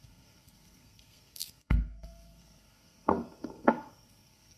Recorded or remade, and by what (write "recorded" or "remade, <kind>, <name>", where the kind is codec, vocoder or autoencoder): remade, codec, SNAC